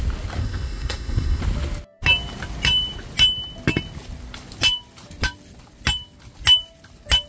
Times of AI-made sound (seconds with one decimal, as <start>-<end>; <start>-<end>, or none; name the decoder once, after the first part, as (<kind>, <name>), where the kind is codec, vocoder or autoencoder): 0.4-1.4 (codec, SNAC)